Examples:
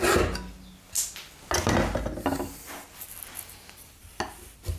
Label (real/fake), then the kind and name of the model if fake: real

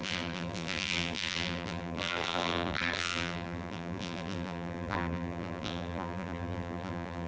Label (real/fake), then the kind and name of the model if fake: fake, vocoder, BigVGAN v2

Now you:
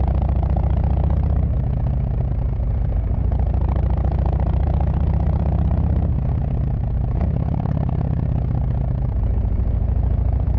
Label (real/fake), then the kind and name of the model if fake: fake, vocoder, BigVGAN v2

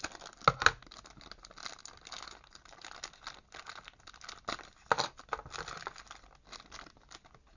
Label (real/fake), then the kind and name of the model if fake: real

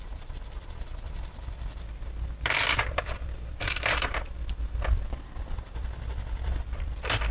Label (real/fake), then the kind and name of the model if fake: fake, vocoder, BigVGAN v2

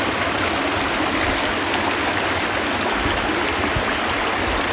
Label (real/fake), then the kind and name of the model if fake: real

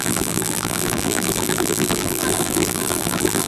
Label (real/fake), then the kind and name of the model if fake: fake, vocoder, BigVGAN v2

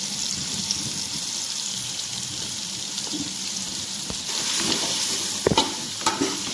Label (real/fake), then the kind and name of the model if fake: fake, vocoder, BigVGAN v2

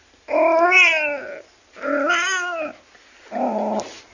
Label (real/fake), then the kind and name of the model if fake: real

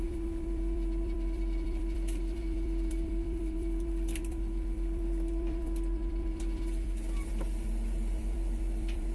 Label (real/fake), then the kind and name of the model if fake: fake, vocoder, BigVGAN v2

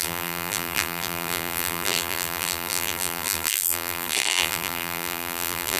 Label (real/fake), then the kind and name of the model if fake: fake, vocoder, BigVGAN v2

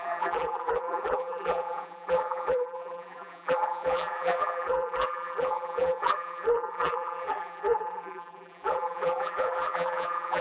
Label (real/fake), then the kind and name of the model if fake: fake, vocoder, BigVGAN v2